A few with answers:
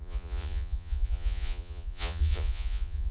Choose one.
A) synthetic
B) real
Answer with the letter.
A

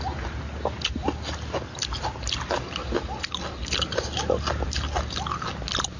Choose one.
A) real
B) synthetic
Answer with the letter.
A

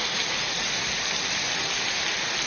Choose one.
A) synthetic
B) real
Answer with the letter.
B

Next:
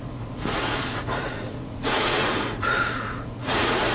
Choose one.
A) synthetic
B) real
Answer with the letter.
A